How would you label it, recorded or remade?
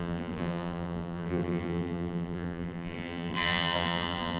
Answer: remade